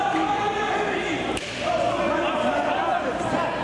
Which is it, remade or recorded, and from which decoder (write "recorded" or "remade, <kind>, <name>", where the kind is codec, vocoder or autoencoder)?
remade, vocoder, BigVGAN v2